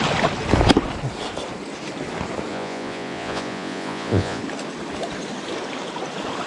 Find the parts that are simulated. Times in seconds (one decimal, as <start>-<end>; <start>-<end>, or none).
2.5-4.4